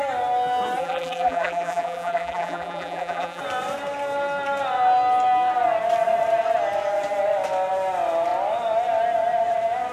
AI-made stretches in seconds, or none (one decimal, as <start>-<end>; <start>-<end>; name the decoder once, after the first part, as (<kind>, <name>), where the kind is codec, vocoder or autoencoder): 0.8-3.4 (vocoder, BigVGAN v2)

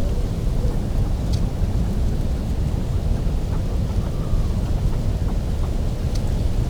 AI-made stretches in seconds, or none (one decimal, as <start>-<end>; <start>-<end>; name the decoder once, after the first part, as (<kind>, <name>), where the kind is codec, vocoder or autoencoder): none

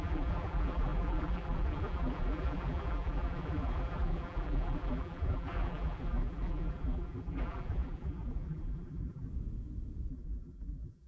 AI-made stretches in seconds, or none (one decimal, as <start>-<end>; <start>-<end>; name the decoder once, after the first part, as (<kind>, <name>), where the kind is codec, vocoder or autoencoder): 0.0-9.3 (vocoder, BigVGAN v2); 10.1-11.1